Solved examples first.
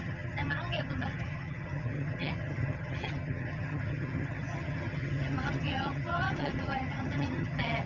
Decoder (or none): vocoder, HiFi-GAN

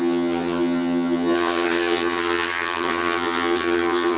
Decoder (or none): vocoder, HiFi-GAN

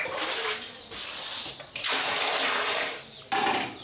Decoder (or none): none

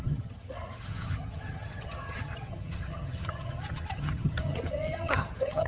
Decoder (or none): vocoder, HiFi-GAN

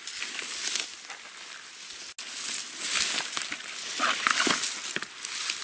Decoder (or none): none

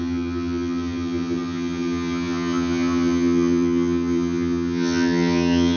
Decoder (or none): vocoder, HiFi-GAN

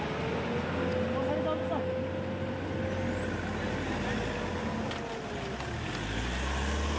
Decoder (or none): none